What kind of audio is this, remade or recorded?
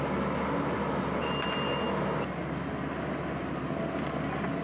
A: recorded